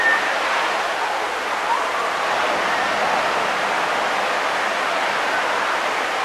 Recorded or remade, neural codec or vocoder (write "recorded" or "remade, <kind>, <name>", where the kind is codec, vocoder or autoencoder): recorded